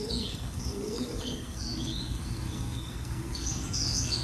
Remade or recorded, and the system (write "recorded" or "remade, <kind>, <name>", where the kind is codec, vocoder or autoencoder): remade, codec, SNAC